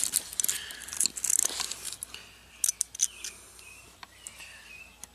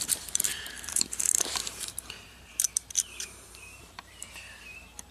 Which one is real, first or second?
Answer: first